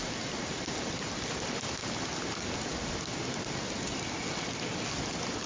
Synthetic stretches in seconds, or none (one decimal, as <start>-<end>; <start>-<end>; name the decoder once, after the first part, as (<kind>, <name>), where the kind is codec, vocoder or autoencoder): none